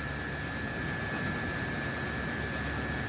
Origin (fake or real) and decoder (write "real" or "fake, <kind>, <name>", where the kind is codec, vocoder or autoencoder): real